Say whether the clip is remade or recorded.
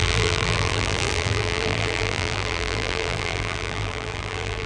remade